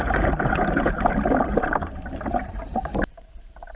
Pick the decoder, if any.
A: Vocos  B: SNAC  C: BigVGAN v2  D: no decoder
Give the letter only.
C